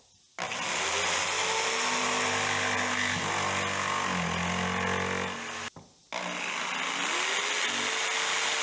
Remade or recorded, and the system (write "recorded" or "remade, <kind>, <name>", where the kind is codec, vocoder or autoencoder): recorded